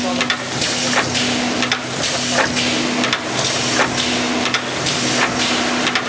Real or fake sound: real